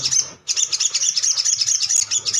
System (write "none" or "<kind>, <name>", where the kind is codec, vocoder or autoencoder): none